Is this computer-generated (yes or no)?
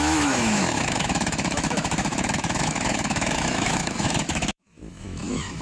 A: yes